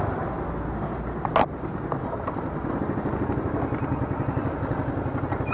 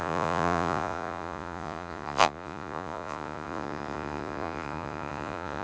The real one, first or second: first